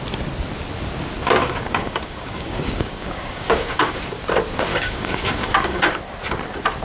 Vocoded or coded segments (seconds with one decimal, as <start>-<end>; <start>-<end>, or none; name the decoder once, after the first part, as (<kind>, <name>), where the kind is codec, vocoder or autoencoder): 1.4-4.0 (codec, DAC); 4.7-6.0